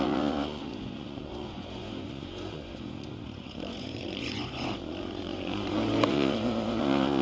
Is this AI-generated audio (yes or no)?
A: yes